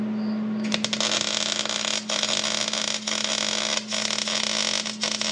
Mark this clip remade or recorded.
recorded